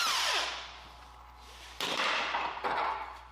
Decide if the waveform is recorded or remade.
remade